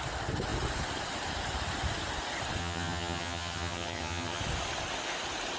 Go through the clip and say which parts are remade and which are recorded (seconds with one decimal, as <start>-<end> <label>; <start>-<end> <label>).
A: 0.0-2.6 recorded; 2.6-4.4 remade; 4.4-5.6 recorded